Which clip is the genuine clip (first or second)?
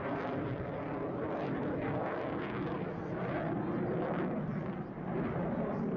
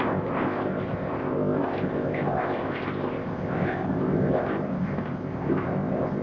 first